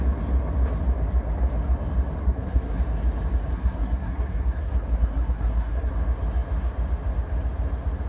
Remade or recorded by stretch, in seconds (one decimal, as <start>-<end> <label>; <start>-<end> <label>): 0.0-2.2 recorded; 2.2-2.8 remade; 2.8-3.5 recorded; 3.5-5.9 remade; 5.9-8.1 recorded